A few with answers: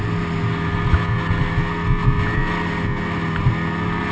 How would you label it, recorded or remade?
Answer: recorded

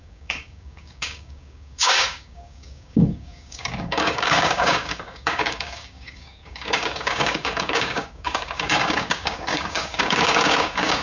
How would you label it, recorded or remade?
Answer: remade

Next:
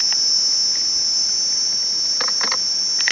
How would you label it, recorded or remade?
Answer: recorded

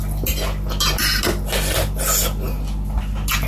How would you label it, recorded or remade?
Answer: recorded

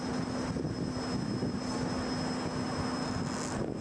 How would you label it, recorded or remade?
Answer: recorded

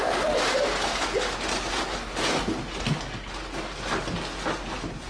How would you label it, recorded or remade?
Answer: recorded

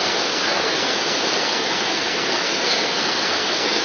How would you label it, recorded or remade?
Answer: remade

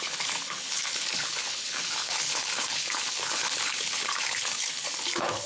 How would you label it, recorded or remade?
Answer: remade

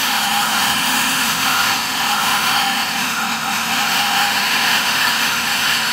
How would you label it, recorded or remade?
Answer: remade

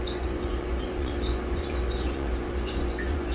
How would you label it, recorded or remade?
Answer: remade